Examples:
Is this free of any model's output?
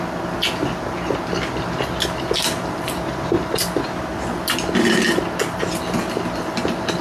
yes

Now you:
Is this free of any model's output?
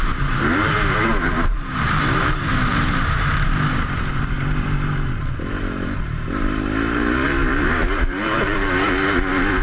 no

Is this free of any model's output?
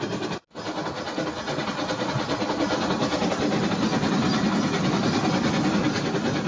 yes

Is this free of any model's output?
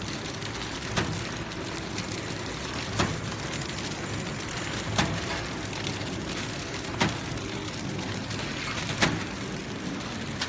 yes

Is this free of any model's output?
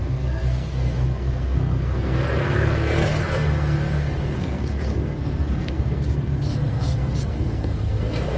no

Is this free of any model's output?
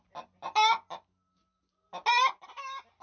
yes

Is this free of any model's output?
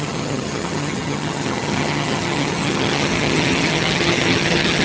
no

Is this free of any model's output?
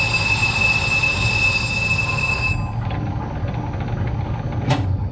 yes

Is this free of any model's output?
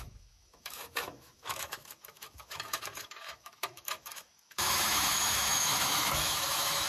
no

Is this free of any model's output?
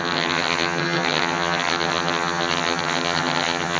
no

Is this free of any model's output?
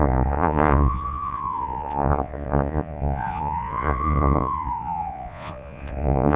no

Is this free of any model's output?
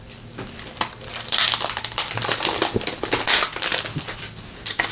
no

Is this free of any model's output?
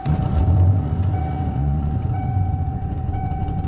no